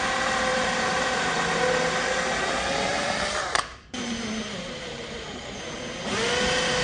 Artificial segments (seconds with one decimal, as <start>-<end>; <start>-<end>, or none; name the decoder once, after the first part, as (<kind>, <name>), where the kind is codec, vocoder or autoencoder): 0.5-1.2 (vocoder, BigVGAN v2); 2.9-6.1